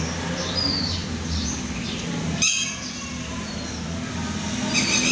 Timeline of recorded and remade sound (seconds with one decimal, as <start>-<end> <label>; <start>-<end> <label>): 0.0-5.1 recorded